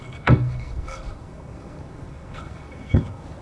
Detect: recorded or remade remade